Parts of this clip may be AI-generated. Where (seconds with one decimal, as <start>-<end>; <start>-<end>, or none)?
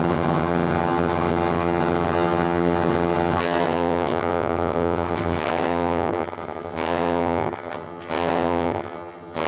0.0-9.5